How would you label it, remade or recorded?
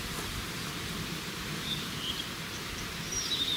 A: remade